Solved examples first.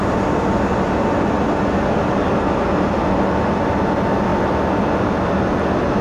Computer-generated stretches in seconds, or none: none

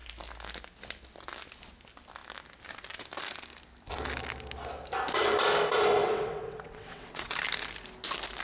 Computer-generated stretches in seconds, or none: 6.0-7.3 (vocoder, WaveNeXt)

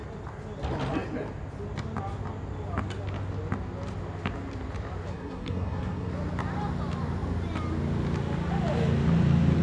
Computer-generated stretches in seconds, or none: 5.1-6.1 (codec, SNAC)

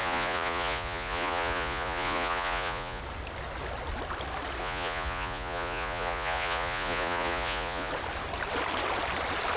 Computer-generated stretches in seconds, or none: 0.0-3.0 (vocoder, Vocos); 4.6-7.9

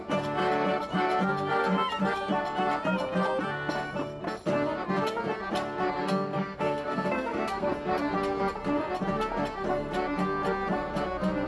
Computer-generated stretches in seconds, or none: 6.0-7.7 (codec, SNAC)

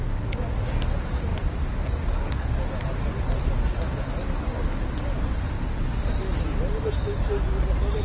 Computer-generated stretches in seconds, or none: none